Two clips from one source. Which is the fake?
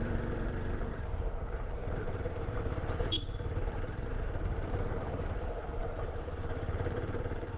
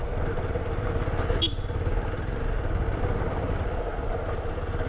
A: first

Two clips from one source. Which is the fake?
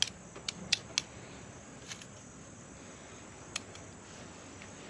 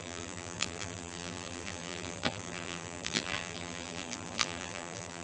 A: second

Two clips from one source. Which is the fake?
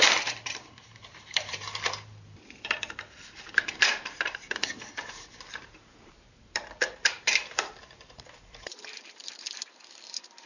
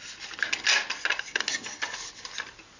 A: first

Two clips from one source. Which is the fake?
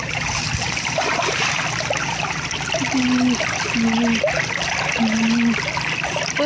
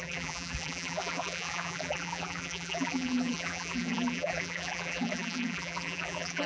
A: second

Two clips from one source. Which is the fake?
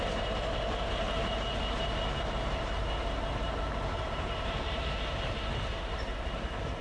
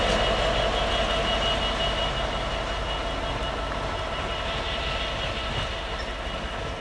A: first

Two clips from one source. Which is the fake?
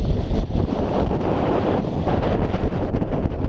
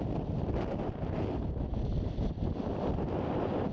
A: first